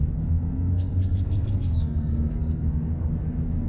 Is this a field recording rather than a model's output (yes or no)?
no